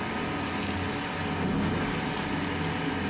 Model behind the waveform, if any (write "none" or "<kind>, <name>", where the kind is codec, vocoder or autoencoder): none